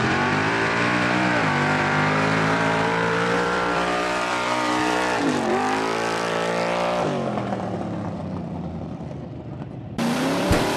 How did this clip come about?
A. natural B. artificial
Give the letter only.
B